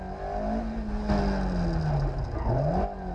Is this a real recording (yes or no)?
yes